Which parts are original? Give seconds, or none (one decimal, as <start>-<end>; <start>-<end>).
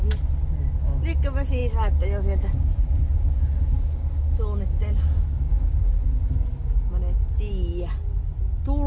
0.0-8.9